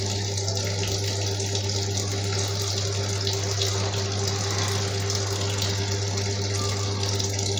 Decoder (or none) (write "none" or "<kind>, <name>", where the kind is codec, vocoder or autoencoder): none